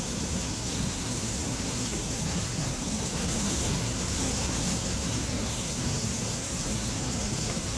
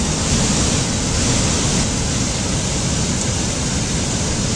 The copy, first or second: first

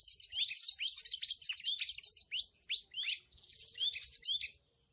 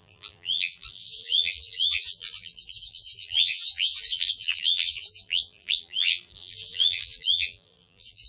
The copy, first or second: second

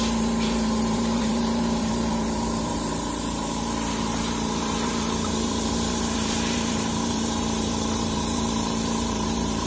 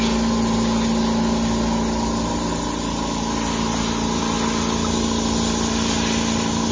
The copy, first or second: first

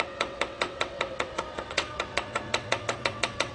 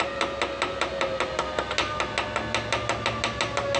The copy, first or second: first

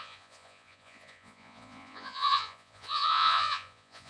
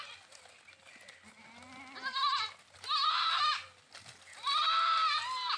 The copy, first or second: first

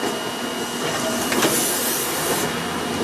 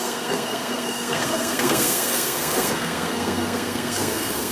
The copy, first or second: second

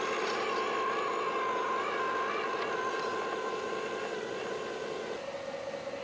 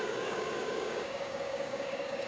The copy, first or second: second